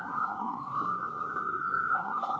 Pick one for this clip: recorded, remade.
remade